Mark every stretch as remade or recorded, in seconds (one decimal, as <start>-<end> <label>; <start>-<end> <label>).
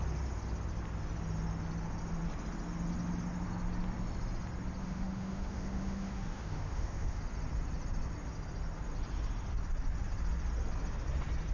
0.0-4.8 recorded; 4.8-7.2 remade; 7.2-11.5 recorded